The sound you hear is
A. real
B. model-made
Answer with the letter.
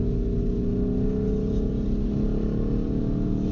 A